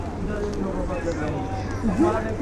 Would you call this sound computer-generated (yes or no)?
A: no